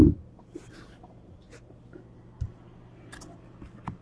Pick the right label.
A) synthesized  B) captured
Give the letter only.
B